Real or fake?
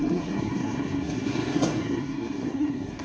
fake